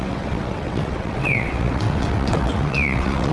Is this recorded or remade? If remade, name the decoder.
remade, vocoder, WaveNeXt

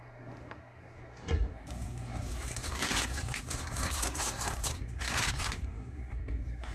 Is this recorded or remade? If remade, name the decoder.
remade, codec, SNAC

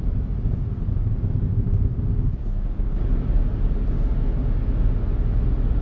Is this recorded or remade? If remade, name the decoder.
recorded